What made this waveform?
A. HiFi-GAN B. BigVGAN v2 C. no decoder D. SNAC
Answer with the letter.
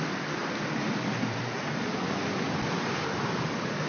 B